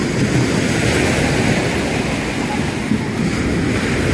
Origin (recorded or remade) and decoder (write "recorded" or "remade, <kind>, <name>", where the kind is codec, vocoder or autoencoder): recorded